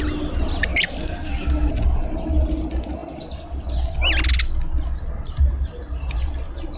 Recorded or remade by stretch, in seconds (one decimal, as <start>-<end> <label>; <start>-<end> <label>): 0.0-1.0 recorded; 1.0-1.7 remade; 1.7-6.8 recorded